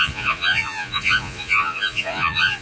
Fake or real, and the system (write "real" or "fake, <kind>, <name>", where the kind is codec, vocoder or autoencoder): fake, vocoder, Vocos